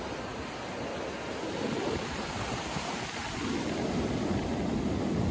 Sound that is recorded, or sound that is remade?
recorded